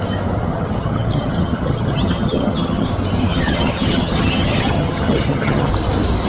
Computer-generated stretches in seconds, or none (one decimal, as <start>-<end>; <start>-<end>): 0.5-2.9; 3.3-5.7